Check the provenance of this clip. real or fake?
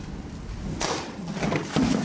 real